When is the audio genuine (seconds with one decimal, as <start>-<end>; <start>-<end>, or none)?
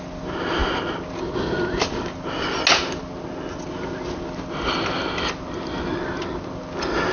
0.0-7.1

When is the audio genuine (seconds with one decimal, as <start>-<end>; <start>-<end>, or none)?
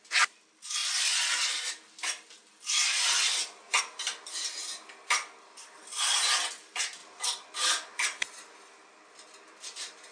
0.0-10.1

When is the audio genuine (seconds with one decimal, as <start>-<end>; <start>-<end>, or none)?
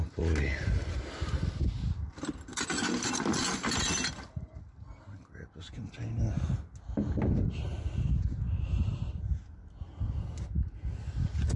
0.0-11.6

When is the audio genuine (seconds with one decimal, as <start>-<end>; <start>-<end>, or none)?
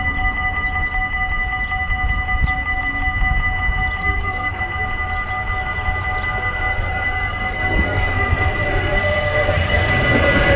0.0-4.0; 4.6-6.7; 9.9-10.6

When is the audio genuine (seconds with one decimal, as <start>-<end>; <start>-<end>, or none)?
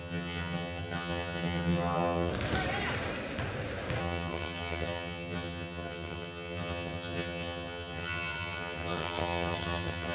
2.3-4.0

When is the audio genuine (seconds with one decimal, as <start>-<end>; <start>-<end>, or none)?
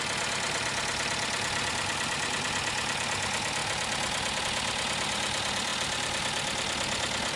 0.0-7.4